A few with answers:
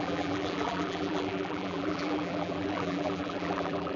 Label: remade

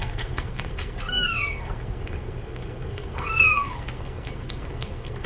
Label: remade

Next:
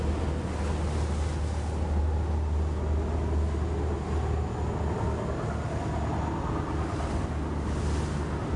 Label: recorded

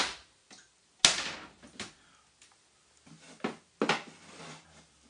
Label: recorded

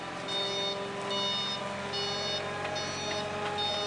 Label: recorded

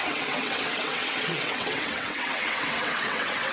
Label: remade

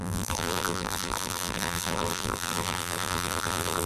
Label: remade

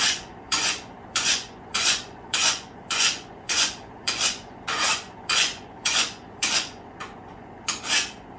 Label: remade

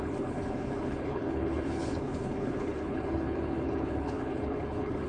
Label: remade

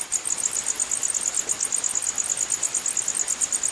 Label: recorded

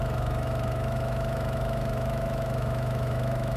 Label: remade